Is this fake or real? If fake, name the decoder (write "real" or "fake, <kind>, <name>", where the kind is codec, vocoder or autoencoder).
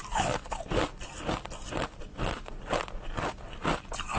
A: real